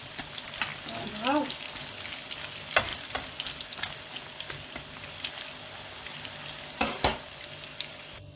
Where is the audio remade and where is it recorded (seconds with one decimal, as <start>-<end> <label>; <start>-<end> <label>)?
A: 0.0-2.9 recorded; 2.9-3.4 remade; 3.4-8.4 recorded